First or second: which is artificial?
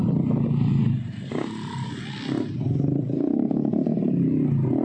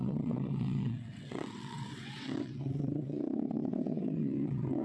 second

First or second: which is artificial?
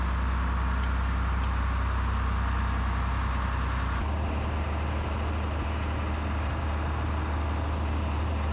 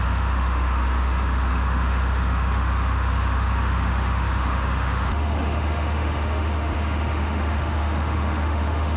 second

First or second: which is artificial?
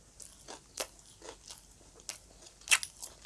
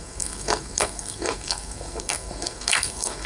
second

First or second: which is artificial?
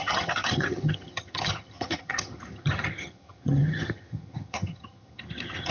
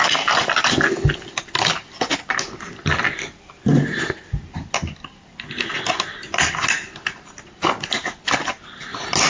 first